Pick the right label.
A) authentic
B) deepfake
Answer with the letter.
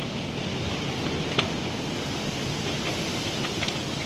A